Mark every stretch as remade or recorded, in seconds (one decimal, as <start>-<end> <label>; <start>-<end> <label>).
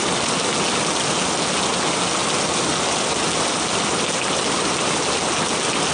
0.0-5.9 recorded